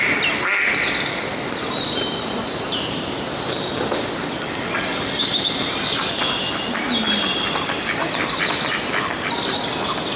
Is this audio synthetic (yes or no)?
no